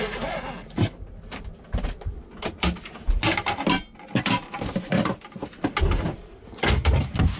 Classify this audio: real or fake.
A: real